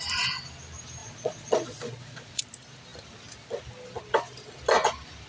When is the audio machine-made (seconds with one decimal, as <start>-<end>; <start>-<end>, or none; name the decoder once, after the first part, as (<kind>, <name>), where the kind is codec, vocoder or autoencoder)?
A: 1.0-2.4 (vocoder, Vocos)